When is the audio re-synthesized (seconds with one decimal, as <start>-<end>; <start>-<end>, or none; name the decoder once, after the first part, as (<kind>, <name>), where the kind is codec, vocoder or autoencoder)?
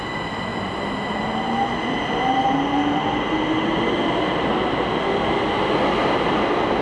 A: none